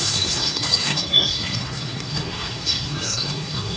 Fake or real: fake